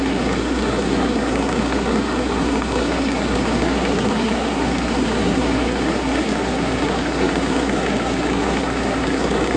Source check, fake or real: fake